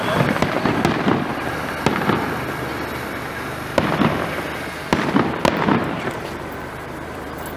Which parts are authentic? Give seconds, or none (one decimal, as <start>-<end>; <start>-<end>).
1.3-5.9